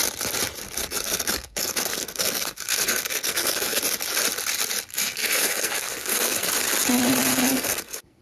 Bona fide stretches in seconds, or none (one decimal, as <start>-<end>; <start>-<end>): 0.0-0.8; 3.8-4.9; 6.5-7.3